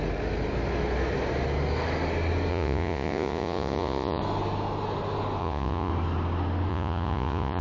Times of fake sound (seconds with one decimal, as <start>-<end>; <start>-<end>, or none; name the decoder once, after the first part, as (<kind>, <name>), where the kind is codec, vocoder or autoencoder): 2.5-4.2 (vocoder, Vocos); 5.4-5.9; 6.7-7.6